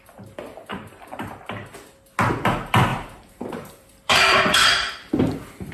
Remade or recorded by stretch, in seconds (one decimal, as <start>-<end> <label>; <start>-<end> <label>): 0.0-0.7 recorded; 0.7-1.3 remade; 1.3-2.9 recorded; 2.9-5.1 remade; 5.1-5.7 recorded